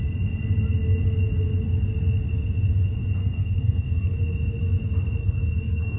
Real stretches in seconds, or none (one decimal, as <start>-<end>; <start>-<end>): 0.0-3.2; 4.2-5.2